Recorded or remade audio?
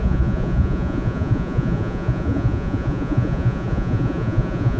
remade